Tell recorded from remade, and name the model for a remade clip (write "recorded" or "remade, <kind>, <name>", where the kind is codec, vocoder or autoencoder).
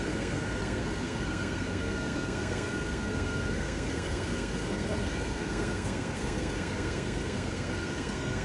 remade, codec, SNAC